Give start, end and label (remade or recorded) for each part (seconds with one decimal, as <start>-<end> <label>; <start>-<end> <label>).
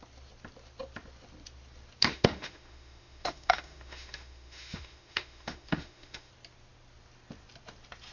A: 0.0-2.0 recorded; 2.0-6.3 remade; 6.3-8.1 recorded